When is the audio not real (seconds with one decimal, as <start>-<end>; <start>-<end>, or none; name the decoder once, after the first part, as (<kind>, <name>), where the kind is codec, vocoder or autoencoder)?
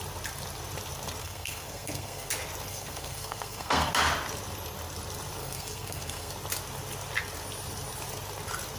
1.2-2.3 (codec, SNAC); 2.7-3.9; 5.4-6.3